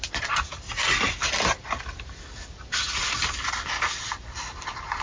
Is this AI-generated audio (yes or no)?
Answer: no